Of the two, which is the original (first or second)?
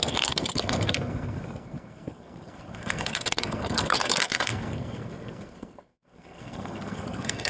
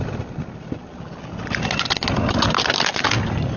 second